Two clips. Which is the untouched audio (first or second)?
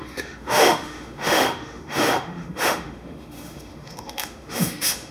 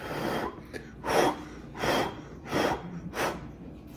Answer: second